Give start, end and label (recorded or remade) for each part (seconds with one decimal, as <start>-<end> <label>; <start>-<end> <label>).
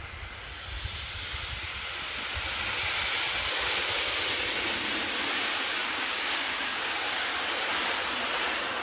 0.0-5.8 recorded; 5.8-7.3 remade; 7.3-8.8 recorded